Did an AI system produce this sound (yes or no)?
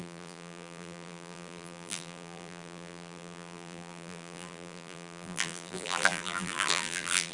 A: yes